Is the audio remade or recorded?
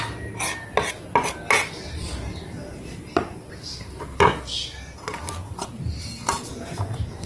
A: recorded